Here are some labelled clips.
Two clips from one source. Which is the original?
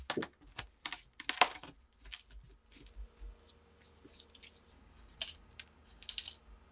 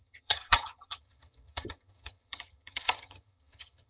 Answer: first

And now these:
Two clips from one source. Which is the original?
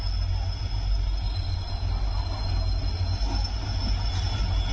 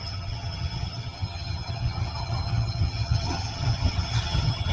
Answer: first